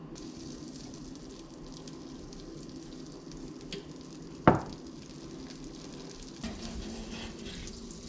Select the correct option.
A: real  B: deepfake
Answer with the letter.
A